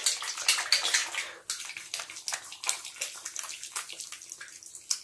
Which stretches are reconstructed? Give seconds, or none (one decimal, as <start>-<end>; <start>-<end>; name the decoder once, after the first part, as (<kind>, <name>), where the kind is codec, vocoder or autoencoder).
none